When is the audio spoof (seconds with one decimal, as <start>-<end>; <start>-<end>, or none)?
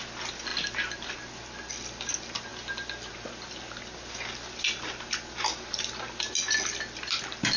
none